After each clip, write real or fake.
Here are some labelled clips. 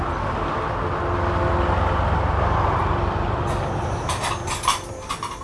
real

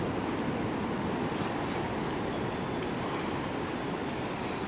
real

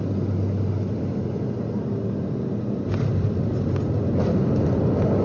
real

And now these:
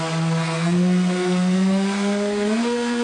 fake